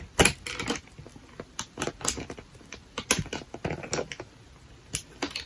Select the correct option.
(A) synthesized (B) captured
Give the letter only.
B